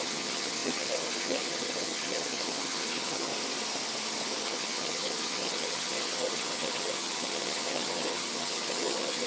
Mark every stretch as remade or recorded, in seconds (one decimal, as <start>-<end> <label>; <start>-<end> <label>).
0.0-3.3 remade; 3.3-4.4 recorded; 4.4-9.3 remade